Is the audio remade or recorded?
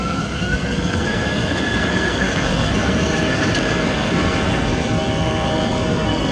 remade